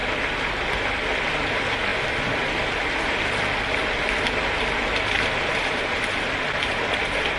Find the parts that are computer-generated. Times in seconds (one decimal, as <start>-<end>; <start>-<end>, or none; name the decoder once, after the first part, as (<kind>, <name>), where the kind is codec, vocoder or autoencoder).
none